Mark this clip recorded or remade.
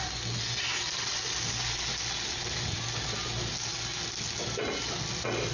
recorded